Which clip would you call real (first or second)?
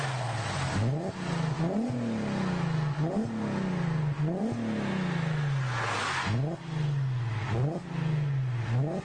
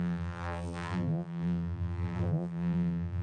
first